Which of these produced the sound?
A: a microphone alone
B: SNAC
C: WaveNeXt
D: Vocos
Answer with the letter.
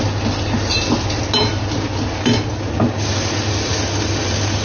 A